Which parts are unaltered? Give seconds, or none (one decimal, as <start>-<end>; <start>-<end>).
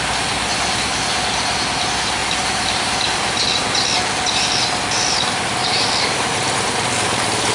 0.0-2.2; 3.4-7.5